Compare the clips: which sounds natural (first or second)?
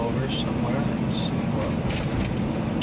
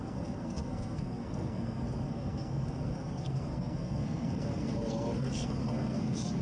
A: first